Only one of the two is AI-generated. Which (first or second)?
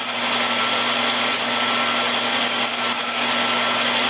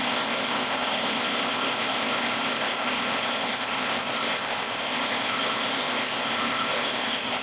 second